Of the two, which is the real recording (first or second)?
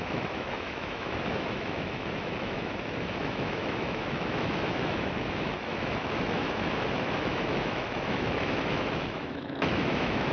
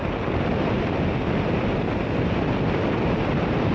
second